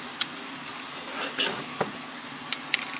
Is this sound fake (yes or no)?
no